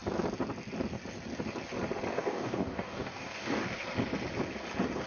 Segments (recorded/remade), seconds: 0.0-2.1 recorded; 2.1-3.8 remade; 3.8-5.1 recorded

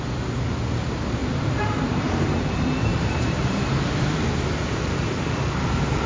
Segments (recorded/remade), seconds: 0.0-1.2 recorded; 1.2-2.5 remade; 2.5-2.9 recorded; 2.9-6.1 remade

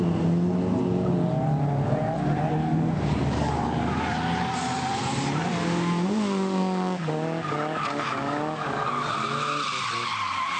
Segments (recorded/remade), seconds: 0.0-2.6 recorded; 2.6-3.9 remade; 3.9-5.5 recorded; 5.5-9.1 remade; 9.1-10.6 recorded

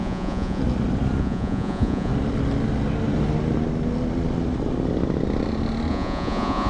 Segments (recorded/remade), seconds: 0.0-0.6 remade; 0.6-1.2 recorded; 1.2-2.1 remade; 2.1-5.9 recorded; 5.9-6.7 remade